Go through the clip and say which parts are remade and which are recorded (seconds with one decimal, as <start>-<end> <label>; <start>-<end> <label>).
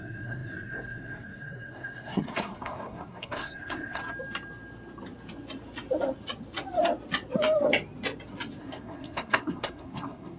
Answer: 0.0-4.0 remade; 4.0-8.6 recorded; 8.6-10.4 remade